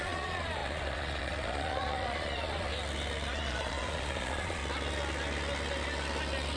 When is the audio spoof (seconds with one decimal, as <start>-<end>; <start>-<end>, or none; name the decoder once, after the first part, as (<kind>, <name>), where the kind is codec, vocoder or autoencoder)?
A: 0.0-2.7 (vocoder, Vocos); 3.3-4.6